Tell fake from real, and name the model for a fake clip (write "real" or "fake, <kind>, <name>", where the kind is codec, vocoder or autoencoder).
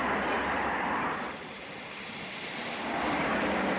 real